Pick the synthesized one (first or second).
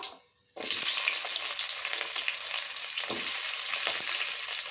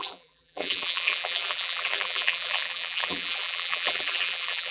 second